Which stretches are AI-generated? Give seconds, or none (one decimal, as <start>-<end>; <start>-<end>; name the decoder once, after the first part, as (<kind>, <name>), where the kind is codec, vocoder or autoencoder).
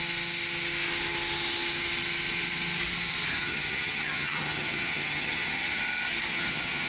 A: 3.4-5.8 (vocoder, HiFi-GAN); 6.3-6.9